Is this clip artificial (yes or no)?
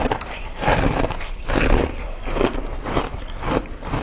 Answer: yes